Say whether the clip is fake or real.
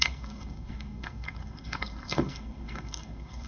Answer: fake